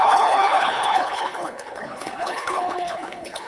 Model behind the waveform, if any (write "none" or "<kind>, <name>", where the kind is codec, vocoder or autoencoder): codec, HILCodec